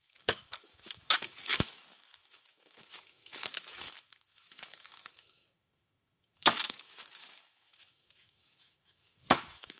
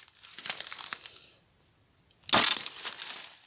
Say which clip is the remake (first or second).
first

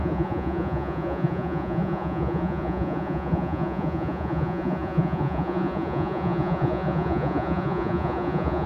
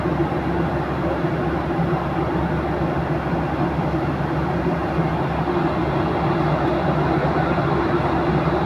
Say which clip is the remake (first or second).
first